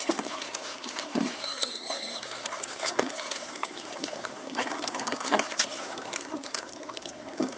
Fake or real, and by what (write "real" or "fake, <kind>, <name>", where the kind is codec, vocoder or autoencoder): fake, codec, SNAC